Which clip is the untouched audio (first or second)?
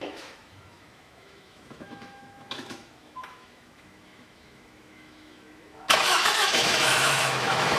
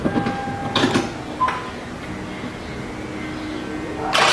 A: second